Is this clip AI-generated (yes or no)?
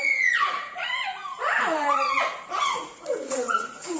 yes